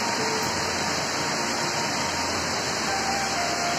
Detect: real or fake real